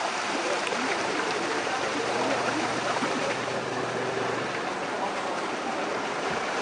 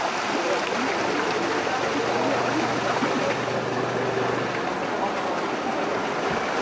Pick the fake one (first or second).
first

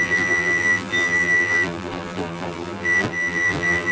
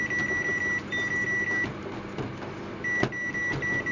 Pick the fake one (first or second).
first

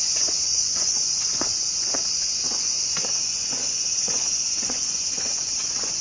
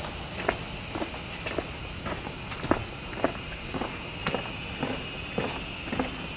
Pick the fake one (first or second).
first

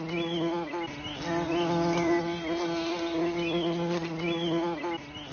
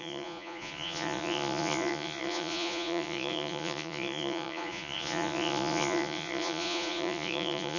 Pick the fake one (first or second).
second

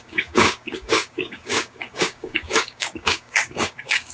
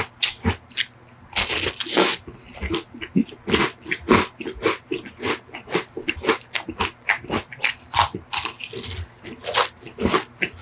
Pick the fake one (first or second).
first